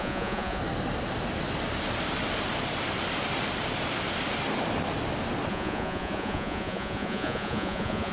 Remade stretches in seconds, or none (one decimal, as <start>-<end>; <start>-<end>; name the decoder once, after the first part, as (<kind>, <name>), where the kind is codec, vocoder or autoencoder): 0.0-0.6 (vocoder, Vocos); 5.5-8.1

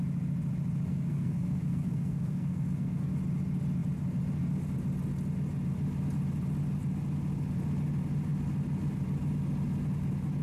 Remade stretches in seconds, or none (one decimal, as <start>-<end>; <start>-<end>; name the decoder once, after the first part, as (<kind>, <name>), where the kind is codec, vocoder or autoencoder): 0.9-3.1 (codec, SNAC)

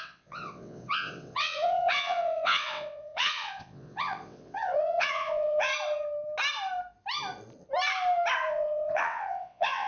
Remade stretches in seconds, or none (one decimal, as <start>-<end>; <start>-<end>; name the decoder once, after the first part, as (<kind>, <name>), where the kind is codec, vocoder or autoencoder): 0.0-5.7 (vocoder, WaveNeXt); 8.5-9.9

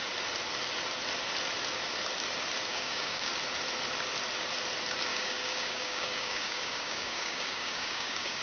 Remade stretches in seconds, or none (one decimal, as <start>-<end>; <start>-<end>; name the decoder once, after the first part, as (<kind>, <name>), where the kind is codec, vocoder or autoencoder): 2.7-3.3 (codec, DAC); 5.1-8.4

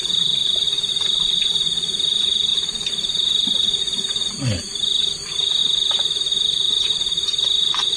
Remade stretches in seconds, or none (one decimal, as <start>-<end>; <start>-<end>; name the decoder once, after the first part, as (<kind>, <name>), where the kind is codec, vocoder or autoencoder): 2.5-3.8 (vocoder, BigVGAN v2); 5.6-8.0

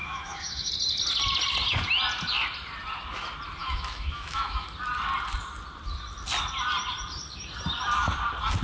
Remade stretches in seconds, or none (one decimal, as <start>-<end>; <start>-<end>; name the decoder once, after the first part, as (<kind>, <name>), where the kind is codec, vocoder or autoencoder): 0.0-0.7 (autoencoder, DAC-VAE); 3.6-4.7

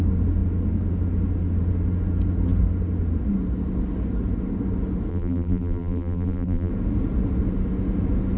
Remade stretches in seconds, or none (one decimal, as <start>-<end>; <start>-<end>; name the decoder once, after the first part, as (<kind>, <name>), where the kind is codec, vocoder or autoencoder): 5.1-6.7 (vocoder, BigVGAN v2)

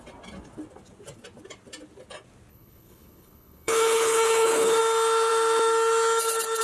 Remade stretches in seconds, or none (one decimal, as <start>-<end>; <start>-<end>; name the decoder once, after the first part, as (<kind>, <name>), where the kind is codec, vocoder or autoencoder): 2.5-4.8 (codec, HILCodec)